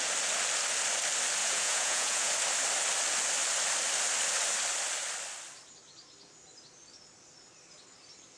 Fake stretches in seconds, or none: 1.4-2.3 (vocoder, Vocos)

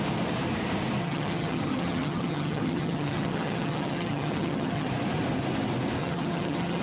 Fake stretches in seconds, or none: 1.0-4.9 (vocoder, HiFi-GAN); 6.0-6.8

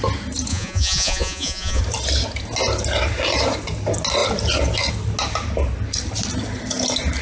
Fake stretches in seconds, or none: 0.5-1.8 (vocoder, Vocos)

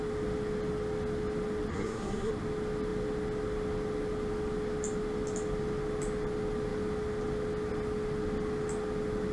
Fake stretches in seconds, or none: 1.7-2.3 (codec, SNAC)

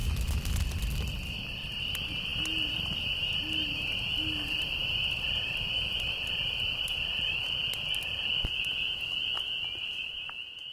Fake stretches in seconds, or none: none